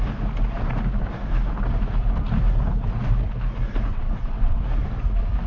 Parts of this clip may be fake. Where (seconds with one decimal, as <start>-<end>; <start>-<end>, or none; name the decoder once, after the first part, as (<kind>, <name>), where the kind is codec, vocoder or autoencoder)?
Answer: 3.9-4.6 (vocoder, WaveNeXt)

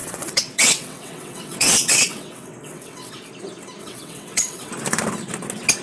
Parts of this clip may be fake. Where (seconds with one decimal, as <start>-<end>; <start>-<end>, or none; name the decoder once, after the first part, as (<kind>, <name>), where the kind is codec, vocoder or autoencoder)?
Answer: 0.0-3.3 (vocoder, WaveNeXt); 3.8-4.7

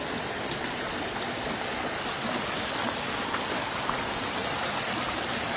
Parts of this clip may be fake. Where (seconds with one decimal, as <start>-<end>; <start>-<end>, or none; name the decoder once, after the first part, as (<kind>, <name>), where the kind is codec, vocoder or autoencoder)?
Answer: none

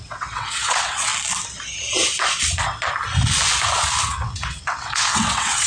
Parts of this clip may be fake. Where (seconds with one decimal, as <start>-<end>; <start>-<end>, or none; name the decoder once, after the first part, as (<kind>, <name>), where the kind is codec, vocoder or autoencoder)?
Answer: 0.0-1.1 (vocoder, WaveNeXt); 4.0-5.7

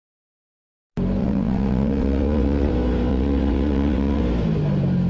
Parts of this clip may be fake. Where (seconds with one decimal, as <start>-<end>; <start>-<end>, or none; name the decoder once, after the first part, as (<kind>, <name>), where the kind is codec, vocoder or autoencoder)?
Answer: 1.2-2.7 (vocoder, WaveNeXt); 3.1-4.2

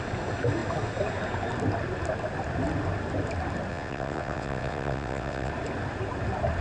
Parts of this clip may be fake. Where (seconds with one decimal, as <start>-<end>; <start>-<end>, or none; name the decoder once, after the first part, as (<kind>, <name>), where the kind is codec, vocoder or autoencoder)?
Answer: 3.7-5.5 (vocoder, WaveNeXt)

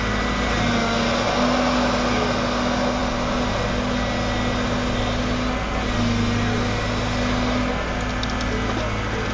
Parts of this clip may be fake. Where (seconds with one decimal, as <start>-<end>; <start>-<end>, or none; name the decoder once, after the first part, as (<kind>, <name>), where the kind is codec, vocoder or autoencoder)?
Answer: none